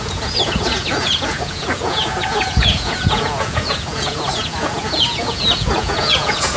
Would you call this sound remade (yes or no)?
yes